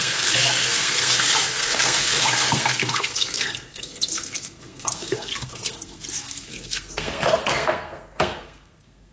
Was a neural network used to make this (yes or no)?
yes